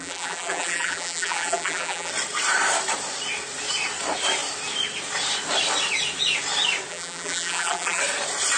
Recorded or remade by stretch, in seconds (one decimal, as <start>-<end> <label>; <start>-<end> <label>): 0.0-2.1 remade; 2.1-6.9 recorded; 6.9-8.0 remade; 8.0-8.6 recorded